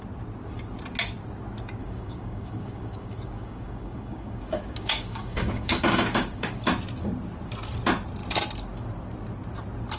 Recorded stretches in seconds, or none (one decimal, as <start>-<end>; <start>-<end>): 0.0-1.8; 6.7-10.0